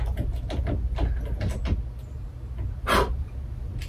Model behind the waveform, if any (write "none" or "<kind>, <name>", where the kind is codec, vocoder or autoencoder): none